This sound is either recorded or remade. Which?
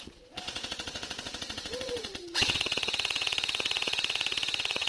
remade